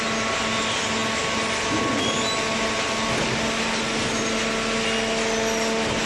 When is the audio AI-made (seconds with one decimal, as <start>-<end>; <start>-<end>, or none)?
none

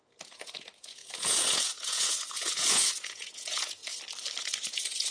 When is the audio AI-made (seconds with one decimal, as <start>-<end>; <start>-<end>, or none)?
0.0-3.8; 4.4-5.1

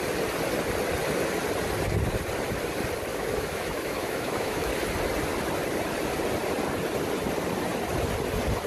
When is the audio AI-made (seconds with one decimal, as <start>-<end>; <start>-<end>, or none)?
3.1-4.7

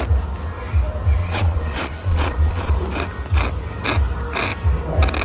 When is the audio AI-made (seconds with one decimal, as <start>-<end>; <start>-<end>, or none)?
1.2-2.7

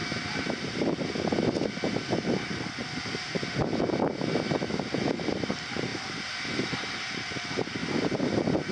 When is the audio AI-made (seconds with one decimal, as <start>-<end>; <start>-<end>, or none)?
0.0-1.0; 2.8-3.4; 7.8-8.7

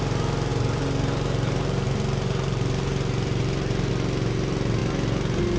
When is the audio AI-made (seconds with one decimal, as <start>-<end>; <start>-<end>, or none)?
0.5-3.9

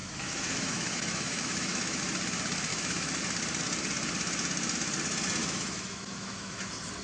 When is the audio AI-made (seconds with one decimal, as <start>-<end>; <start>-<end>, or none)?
0.0-2.0; 2.7-3.2; 5.4-6.6

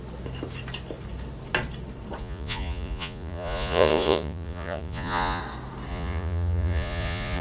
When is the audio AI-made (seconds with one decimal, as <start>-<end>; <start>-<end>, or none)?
2.2-5.4; 5.9-7.4